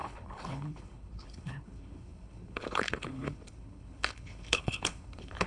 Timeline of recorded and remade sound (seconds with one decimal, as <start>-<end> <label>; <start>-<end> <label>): 0.0-5.5 remade